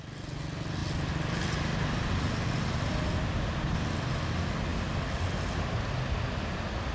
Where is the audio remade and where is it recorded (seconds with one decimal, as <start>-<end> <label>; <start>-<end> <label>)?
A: 0.0-6.9 recorded